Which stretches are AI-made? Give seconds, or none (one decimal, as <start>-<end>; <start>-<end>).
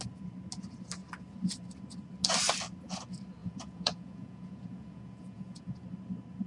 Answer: 3.4-5.8